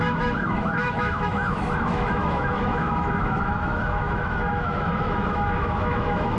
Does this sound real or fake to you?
fake